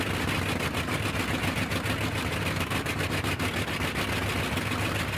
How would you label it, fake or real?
real